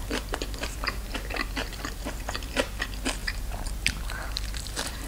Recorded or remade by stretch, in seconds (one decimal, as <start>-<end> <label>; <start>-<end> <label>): 0.0-5.1 remade